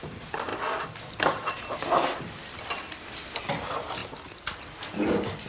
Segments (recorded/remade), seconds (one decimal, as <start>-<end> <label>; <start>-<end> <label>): 0.0-5.5 recorded